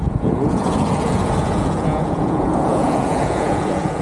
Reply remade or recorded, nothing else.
remade